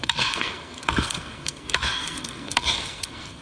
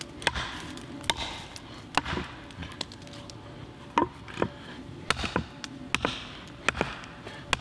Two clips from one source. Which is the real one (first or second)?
second